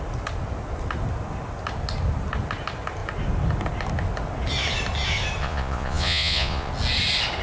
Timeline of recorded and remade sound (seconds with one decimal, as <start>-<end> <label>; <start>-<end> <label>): 0.0-5.4 recorded; 5.4-6.7 remade; 6.7-7.4 recorded